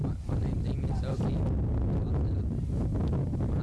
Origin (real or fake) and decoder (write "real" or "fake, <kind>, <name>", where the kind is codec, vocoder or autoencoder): real